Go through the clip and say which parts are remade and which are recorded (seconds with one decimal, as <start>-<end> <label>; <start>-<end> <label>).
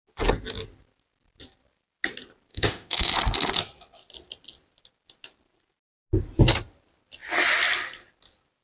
0.0-2.5 recorded; 2.5-3.1 remade; 3.1-8.6 recorded